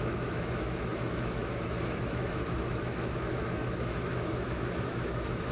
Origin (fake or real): fake